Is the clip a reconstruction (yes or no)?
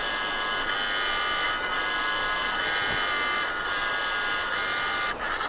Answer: no